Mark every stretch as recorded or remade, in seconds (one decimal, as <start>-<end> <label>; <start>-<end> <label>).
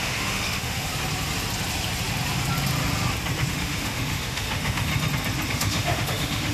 0.0-0.9 remade; 0.9-3.5 recorded; 3.5-4.9 remade; 4.9-5.5 recorded; 5.5-6.5 remade